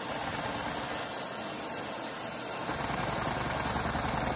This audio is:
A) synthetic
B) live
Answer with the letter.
B